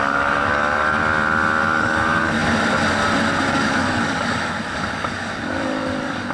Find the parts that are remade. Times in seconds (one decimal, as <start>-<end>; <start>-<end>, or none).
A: 0.0-1.0; 1.6-2.4; 3.5-6.3